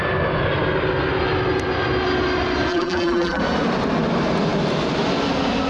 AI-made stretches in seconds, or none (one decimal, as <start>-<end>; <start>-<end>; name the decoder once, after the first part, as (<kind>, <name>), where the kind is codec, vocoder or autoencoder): 2.7-3.4 (vocoder, BigVGAN v2)

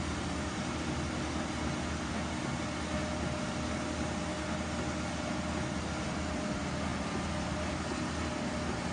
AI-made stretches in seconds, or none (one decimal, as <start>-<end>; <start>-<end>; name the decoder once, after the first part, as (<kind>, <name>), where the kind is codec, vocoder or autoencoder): none

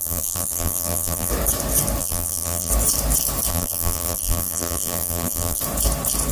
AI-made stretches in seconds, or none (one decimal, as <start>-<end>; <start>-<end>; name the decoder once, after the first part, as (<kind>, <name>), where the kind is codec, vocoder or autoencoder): 0.0-1.3 (vocoder, BigVGAN v2); 2.0-2.7; 3.5-5.6

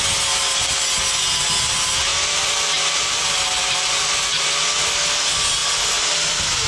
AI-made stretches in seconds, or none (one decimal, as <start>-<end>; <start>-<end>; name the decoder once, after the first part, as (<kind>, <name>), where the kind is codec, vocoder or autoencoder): 2.1-4.1 (vocoder, BigVGAN v2)

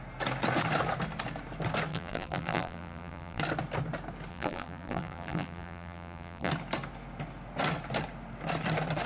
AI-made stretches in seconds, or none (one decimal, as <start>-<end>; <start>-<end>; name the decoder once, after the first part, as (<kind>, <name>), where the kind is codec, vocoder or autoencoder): 1.9-3.4 (vocoder, BigVGAN v2); 4.3-6.5

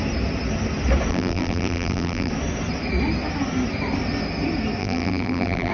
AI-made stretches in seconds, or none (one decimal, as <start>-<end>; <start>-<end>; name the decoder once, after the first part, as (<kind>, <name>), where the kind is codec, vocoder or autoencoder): 1.1-2.3 (vocoder, BigVGAN v2); 4.8-5.7

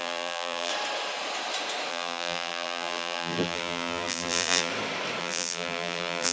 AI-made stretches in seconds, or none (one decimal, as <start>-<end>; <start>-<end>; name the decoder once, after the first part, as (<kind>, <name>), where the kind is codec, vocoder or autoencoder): 0.0-0.7 (vocoder, BigVGAN v2); 1.9-4.7; 5.2-6.3